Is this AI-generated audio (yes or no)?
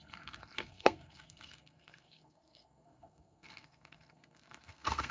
yes